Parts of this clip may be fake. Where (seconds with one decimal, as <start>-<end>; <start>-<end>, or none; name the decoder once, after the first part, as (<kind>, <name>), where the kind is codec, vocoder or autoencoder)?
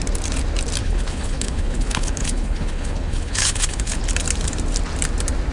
0.8-4.0 (codec, HILCodec)